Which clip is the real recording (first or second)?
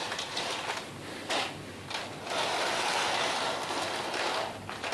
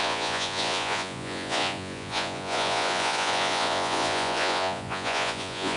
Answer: first